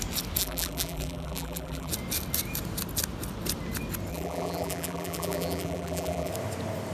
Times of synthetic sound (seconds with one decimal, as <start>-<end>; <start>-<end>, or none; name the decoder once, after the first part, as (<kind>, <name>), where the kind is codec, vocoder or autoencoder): 0.4-1.9 (vocoder, BigVGAN v2); 4.1-6.3